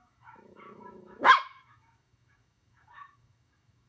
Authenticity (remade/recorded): remade